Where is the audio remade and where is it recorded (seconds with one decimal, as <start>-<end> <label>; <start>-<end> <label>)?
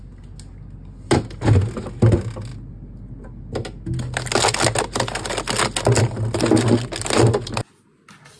0.0-8.4 recorded